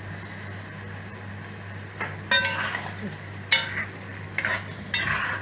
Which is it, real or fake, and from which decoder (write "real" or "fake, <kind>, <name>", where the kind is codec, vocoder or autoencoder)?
real